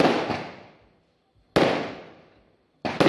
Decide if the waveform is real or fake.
real